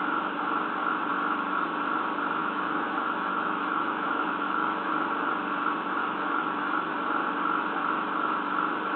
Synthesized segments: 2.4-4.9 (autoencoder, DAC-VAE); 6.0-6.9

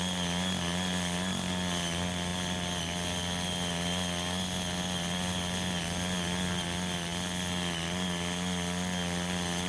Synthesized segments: none